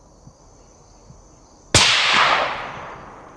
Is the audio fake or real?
real